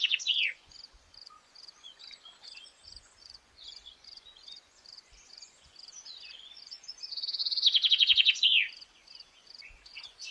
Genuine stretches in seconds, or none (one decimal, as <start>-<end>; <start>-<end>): 7.4-7.9